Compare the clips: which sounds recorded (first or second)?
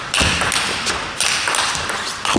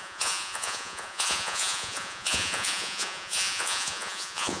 first